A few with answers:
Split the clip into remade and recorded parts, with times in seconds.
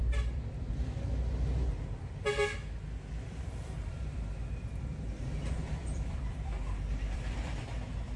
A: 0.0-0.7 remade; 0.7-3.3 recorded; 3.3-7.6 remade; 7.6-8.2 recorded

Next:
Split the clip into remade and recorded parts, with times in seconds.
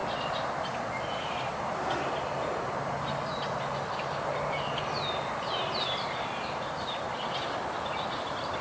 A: 0.0-8.6 recorded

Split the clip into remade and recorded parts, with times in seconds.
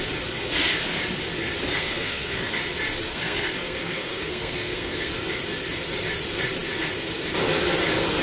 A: 0.0-1.7 recorded; 1.7-2.5 remade; 2.5-3.1 recorded; 3.1-5.1 remade; 5.1-8.2 recorded